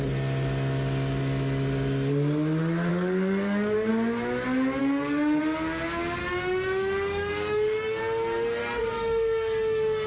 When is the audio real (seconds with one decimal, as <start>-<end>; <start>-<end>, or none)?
0.0-2.9; 3.9-4.8; 5.4-6.2; 8.0-8.6